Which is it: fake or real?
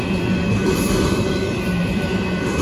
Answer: fake